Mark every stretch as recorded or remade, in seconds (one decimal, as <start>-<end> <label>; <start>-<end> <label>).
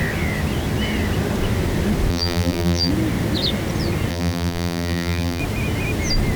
0.0-2.1 recorded; 2.1-2.9 remade; 2.9-4.1 recorded; 4.1-5.4 remade; 5.4-6.4 recorded